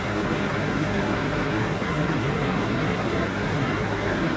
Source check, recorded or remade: remade